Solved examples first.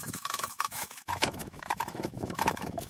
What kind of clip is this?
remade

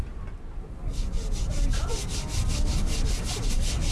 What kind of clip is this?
recorded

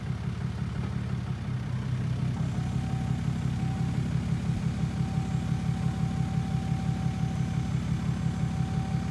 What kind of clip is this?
recorded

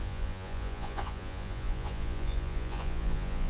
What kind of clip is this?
remade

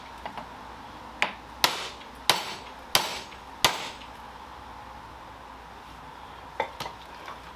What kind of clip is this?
recorded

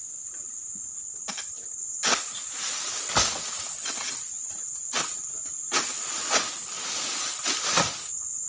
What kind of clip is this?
recorded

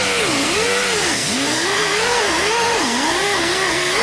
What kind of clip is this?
remade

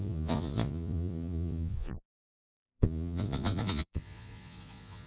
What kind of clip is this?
remade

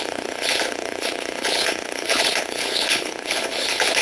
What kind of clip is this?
remade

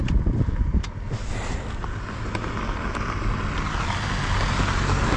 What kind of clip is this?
recorded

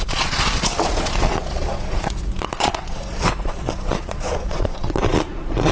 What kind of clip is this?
remade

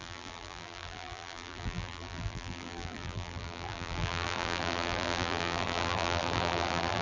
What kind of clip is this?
remade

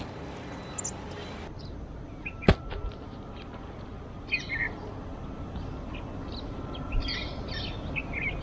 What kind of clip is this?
recorded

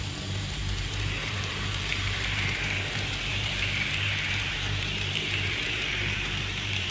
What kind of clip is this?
remade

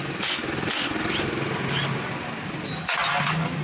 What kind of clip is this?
recorded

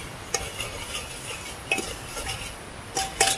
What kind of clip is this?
recorded